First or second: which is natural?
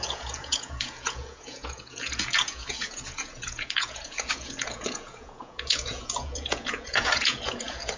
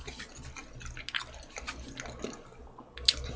second